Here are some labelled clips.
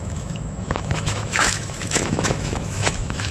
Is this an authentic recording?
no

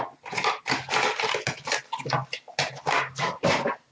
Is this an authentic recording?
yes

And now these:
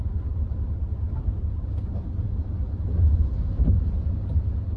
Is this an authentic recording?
yes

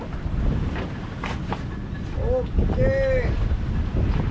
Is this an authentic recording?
yes